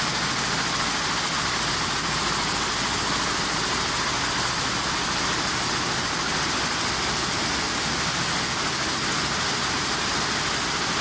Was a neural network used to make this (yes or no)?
no